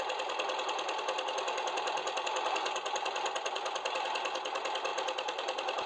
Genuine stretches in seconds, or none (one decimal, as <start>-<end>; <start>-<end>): 0.0-4.9